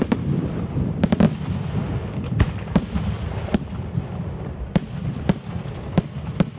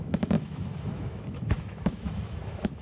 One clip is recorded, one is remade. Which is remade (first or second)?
second